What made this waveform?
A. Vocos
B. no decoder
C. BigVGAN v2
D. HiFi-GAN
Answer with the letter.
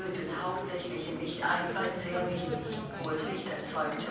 B